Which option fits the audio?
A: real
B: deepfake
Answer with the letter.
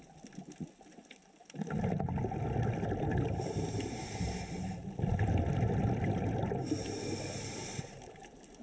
A